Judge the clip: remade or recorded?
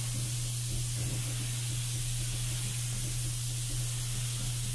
recorded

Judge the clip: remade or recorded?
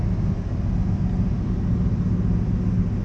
recorded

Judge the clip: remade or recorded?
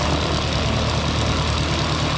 recorded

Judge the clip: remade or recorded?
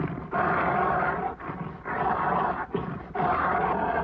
recorded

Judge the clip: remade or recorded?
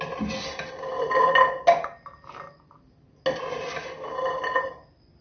recorded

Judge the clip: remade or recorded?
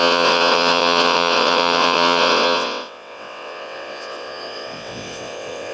remade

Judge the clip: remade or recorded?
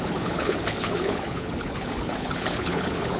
remade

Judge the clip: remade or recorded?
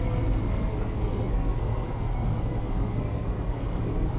remade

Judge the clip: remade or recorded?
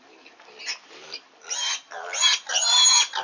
recorded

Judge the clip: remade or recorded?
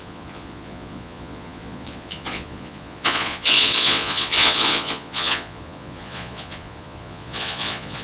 remade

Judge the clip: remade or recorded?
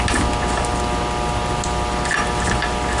recorded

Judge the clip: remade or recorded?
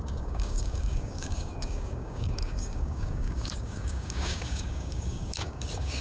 remade